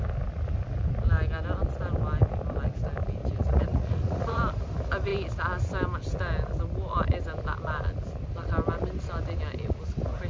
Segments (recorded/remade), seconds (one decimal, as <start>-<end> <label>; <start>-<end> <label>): 0.0-3.2 recorded; 3.2-4.4 remade; 4.4-10.3 recorded